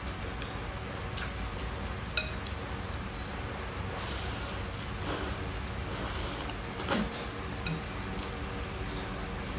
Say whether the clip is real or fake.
real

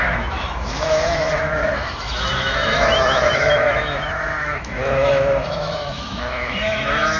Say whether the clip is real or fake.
fake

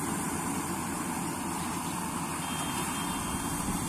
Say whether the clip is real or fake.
real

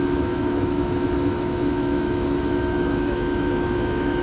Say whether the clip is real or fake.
fake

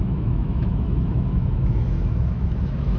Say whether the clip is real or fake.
fake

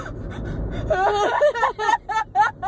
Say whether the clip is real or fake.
real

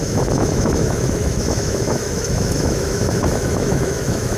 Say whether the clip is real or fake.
fake